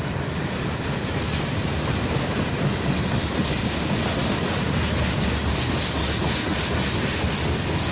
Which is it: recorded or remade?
recorded